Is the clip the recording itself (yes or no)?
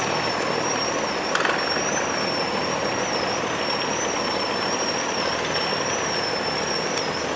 yes